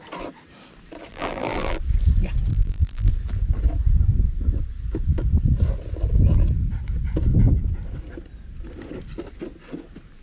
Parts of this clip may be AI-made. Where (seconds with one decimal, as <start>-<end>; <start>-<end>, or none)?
1.1-1.8; 2.5-3.1